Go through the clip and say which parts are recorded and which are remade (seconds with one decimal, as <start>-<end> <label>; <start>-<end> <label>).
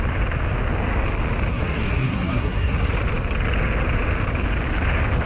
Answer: 0.0-1.5 recorded; 1.5-2.9 remade; 2.9-5.3 recorded